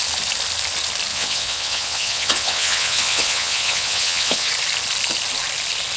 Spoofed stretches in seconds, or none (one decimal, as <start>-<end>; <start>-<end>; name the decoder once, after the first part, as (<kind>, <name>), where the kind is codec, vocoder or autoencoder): 1.1-4.5 (vocoder, WaveNeXt)